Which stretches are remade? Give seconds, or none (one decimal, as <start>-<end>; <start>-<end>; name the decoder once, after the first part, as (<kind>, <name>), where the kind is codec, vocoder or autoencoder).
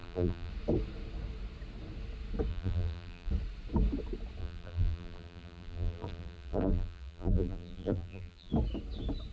0.0-0.5 (vocoder, BigVGAN v2); 2.5-3.3; 4.4-8.5